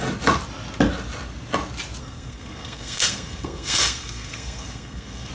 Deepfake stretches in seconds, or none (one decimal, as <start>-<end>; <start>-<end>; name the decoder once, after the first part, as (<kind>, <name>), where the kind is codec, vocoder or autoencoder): 2.0-5.3 (codec, SNAC)